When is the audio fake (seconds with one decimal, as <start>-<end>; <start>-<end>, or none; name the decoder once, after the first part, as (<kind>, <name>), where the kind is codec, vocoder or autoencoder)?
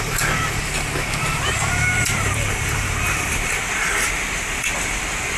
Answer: 1.2-3.5 (vocoder, BigVGAN v2)